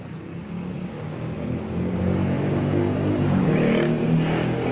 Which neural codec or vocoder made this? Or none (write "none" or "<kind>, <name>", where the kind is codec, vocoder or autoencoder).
codec, DAC